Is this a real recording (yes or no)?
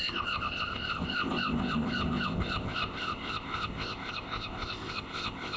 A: no